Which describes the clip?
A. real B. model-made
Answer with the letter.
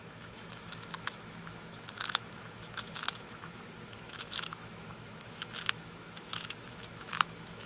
B